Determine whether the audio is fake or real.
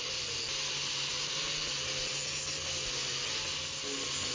real